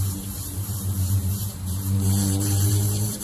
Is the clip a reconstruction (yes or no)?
yes